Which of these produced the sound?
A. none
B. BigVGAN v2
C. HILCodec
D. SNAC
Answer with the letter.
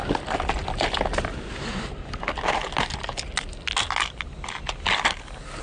A